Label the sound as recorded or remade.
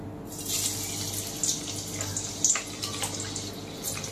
recorded